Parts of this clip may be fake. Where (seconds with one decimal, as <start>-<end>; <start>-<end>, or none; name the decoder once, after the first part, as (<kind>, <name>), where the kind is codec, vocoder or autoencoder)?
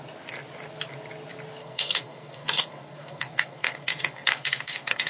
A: 1.6-5.1 (codec, SNAC)